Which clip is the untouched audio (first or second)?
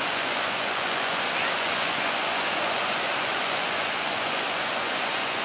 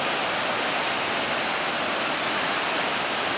second